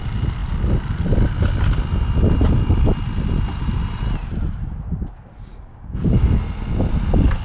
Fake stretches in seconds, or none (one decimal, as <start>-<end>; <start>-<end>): 5.5-6.4